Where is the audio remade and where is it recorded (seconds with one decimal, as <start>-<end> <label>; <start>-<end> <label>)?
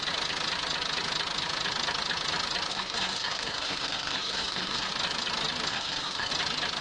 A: 0.0-2.7 recorded; 2.7-4.9 remade; 4.9-5.7 recorded; 5.7-6.3 remade; 6.3-6.8 recorded